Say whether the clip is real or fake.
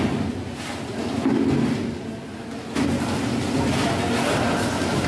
real